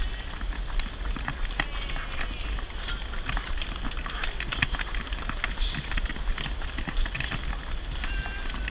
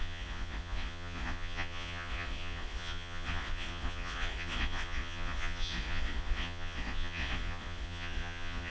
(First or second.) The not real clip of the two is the second